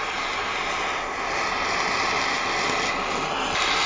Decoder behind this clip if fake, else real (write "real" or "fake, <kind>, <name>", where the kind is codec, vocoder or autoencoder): real